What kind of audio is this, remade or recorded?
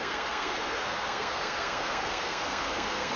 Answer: remade